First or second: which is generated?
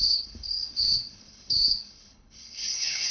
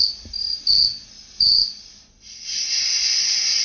first